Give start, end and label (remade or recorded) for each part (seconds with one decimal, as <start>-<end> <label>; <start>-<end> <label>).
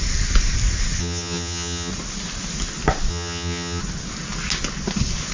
0.0-1.0 recorded; 1.0-1.9 remade; 1.9-3.1 recorded; 3.1-3.8 remade; 3.8-5.3 recorded